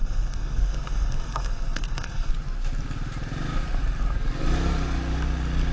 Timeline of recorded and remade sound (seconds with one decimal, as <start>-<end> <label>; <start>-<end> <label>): 0.0-2.3 remade; 2.3-5.7 recorded